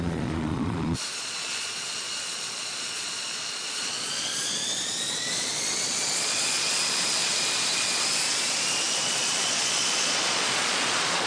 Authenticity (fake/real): fake